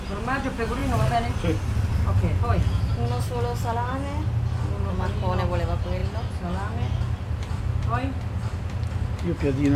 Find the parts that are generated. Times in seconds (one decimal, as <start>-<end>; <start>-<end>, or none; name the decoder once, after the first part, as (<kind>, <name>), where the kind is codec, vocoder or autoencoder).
none